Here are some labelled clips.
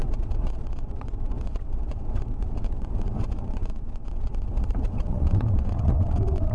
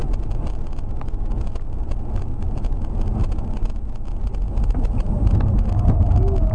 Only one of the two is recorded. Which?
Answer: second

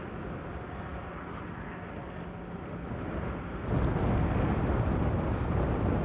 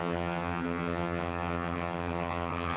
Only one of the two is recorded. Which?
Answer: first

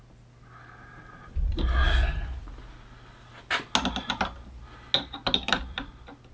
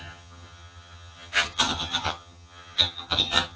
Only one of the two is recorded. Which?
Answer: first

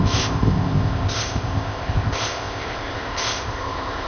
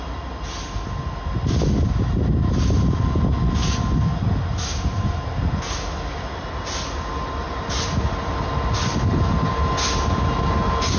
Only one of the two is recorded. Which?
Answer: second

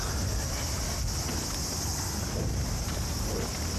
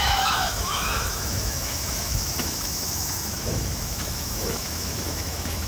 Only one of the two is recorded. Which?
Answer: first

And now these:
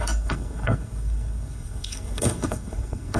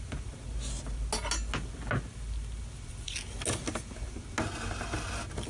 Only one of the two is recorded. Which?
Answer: second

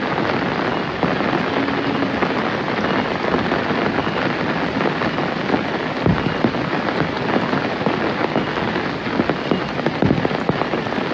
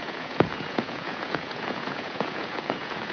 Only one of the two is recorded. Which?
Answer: first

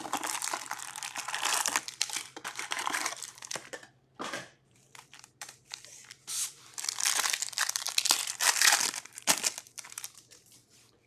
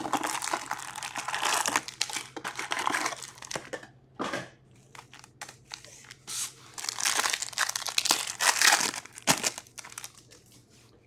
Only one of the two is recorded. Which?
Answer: second